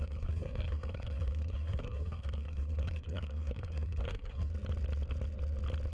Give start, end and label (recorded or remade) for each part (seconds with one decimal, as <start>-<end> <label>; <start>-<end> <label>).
0.0-4.5 remade; 4.5-5.9 recorded